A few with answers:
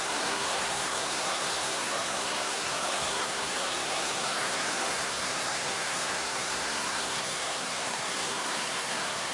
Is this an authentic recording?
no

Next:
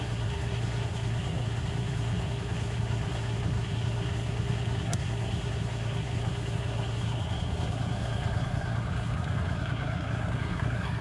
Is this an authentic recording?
no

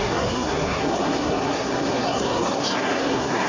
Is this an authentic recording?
no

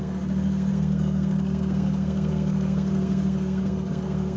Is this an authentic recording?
no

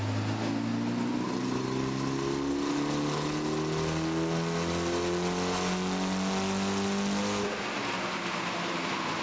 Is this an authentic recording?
yes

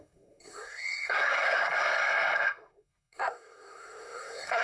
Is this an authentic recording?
no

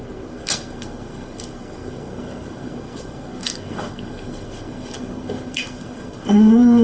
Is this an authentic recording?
no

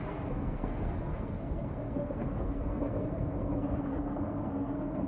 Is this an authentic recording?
no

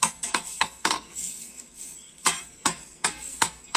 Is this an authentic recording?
no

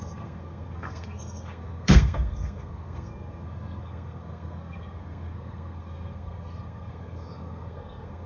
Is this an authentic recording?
no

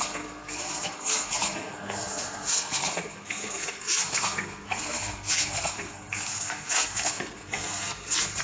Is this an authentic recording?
no